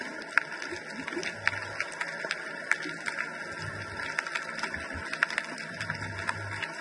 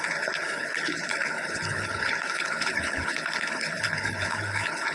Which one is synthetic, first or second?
second